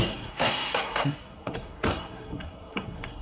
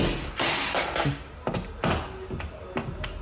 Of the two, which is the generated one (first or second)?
first